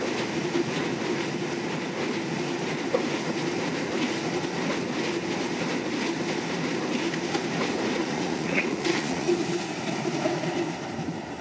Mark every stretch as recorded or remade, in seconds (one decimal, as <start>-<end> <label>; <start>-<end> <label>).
0.0-8.0 recorded; 8.0-9.3 remade; 9.3-11.4 recorded